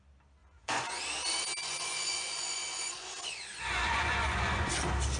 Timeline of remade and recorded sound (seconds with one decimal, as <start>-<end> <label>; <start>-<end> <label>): 0.0-0.4 recorded; 0.4-1.0 remade; 1.0-1.6 recorded; 1.6-4.7 remade; 4.7-5.2 recorded